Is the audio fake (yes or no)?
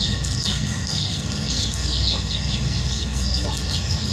yes